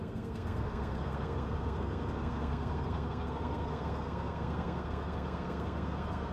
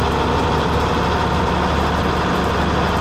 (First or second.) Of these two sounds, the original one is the second